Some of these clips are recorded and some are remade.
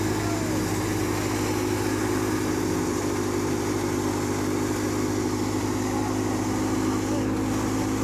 recorded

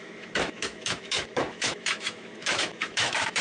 remade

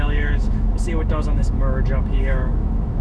remade